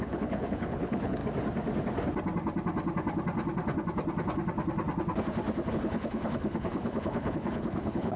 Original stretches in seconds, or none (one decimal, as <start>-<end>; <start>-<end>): 1.2-5.7